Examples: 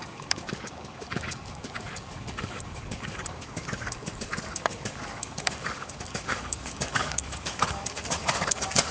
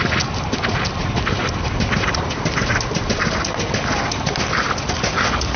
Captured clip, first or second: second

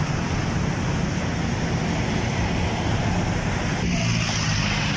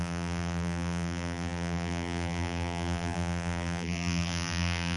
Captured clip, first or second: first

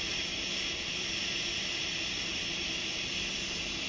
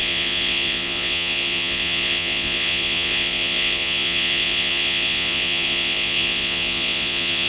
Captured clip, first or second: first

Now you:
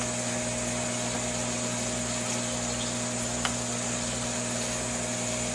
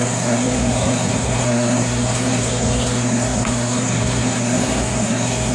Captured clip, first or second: first